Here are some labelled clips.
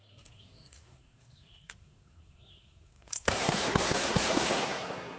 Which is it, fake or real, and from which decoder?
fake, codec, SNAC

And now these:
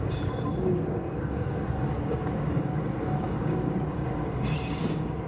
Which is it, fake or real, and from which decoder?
fake, codec, DAC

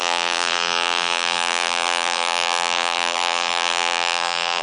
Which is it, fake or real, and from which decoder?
fake, vocoder, BigVGAN v2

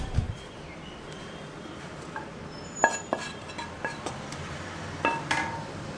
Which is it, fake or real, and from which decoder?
fake, vocoder, BigVGAN v2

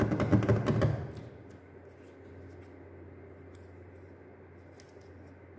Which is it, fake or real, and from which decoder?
real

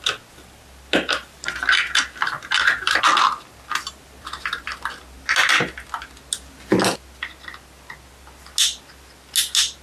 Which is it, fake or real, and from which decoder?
real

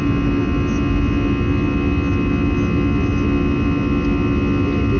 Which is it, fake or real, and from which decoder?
real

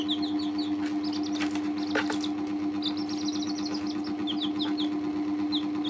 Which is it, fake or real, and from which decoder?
real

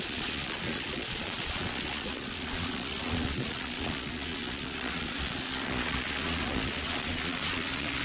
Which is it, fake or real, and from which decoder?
fake, vocoder, Vocos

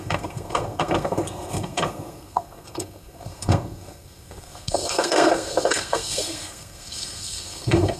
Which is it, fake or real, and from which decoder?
fake, codec, SNAC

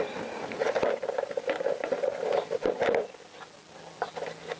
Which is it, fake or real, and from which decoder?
real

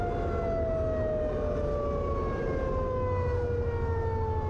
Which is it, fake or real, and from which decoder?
real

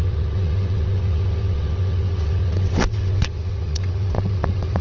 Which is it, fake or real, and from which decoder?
fake, vocoder, WaveNeXt